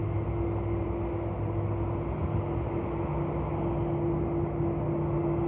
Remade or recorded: recorded